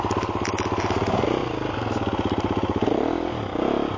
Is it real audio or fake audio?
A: real